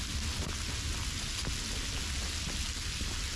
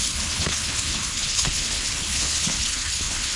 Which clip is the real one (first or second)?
first